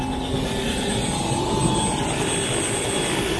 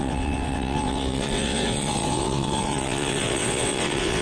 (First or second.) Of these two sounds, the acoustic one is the first